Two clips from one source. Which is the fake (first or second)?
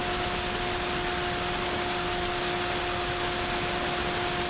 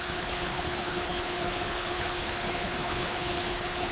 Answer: second